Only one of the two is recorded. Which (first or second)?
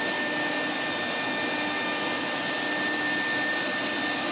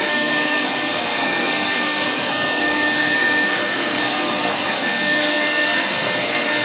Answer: first